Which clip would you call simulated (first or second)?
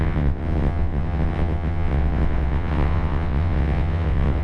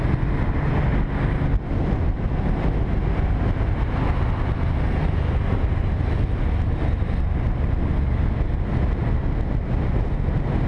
first